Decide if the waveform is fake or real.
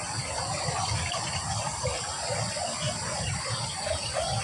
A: real